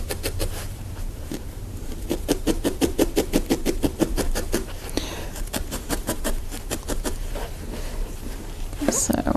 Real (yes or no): no